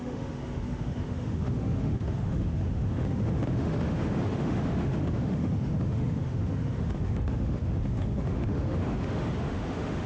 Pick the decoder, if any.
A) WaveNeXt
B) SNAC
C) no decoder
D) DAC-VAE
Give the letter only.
D